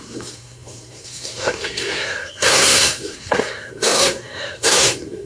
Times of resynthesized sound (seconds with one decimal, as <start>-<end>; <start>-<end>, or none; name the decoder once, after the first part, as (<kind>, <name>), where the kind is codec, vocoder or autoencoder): 0.0-5.3 (codec, SNAC)